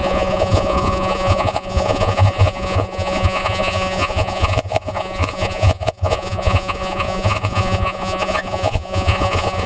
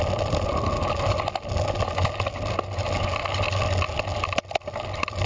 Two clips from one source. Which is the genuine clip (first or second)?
second